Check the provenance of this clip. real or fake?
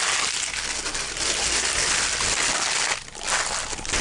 real